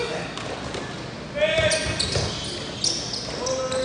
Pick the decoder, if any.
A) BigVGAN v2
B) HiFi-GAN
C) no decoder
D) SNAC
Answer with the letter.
C